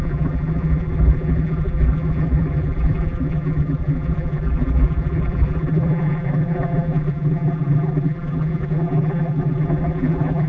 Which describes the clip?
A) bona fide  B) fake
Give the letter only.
B